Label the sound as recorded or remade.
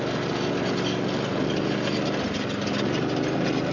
recorded